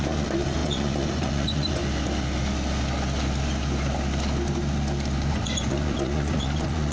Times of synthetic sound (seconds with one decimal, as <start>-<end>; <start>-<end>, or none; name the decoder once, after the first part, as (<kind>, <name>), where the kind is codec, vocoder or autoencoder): 0.0-1.8 (vocoder, Vocos); 5.3-6.9